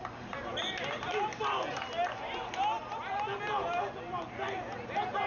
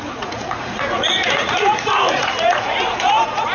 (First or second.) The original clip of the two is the first